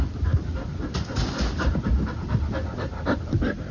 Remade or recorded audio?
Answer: recorded